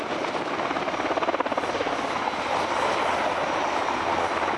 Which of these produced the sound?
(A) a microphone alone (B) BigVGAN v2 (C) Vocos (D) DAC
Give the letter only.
A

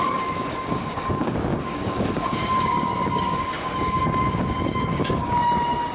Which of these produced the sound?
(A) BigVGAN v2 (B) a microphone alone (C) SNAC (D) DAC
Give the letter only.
D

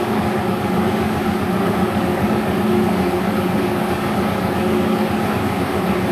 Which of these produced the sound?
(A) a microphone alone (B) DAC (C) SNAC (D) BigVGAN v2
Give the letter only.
B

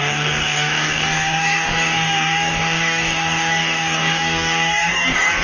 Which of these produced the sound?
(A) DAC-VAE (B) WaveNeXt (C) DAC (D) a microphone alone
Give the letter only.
C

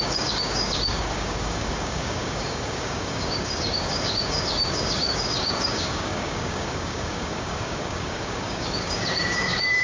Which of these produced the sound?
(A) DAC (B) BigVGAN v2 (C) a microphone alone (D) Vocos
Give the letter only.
A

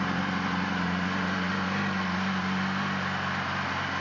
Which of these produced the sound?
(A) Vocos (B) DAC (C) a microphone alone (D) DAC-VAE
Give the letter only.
C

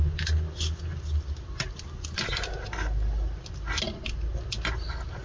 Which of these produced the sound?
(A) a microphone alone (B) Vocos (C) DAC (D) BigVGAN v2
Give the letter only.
A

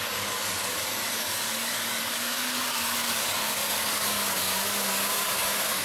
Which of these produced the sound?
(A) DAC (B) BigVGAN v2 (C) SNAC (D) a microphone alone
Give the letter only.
A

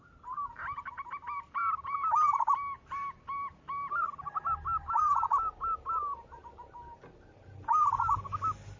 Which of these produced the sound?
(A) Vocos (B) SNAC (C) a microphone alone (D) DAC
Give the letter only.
C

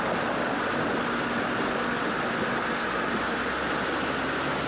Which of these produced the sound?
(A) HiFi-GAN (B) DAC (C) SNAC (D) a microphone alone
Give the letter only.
D